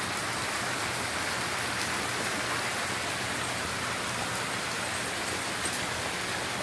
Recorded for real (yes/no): yes